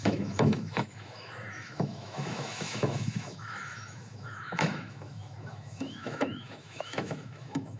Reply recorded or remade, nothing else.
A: remade